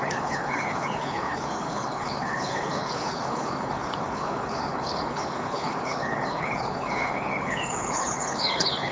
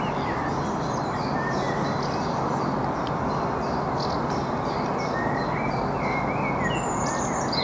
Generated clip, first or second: first